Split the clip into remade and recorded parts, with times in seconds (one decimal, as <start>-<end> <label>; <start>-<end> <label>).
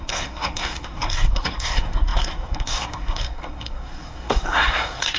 0.0-5.2 remade